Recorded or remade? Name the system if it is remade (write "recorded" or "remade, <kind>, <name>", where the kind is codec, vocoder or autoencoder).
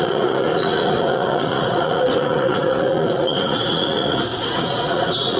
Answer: remade, vocoder, Vocos